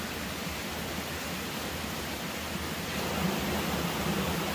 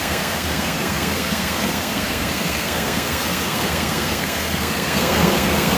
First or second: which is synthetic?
second